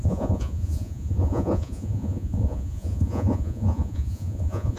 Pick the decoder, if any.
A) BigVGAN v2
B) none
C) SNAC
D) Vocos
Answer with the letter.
D